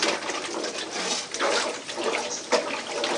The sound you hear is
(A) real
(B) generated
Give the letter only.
A